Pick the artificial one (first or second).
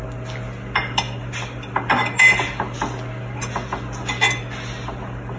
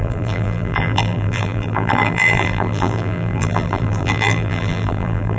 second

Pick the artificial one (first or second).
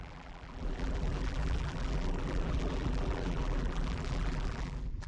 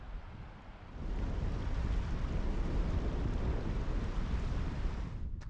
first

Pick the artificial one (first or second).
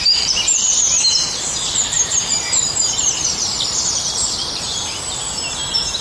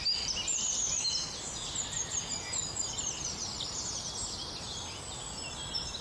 first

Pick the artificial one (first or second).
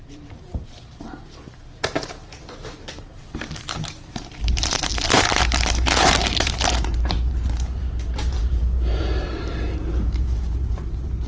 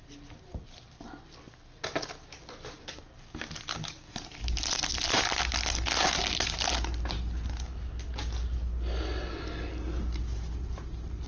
first